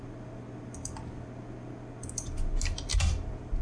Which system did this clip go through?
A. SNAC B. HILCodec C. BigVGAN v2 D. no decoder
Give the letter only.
D